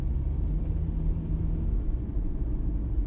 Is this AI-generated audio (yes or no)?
no